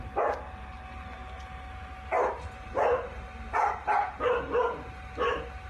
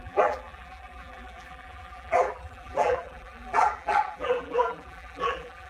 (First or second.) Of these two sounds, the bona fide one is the first